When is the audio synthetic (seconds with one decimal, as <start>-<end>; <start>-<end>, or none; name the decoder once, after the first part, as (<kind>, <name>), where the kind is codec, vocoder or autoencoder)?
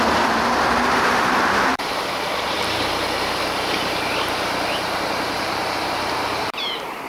0.0-7.1 (vocoder, BigVGAN v2)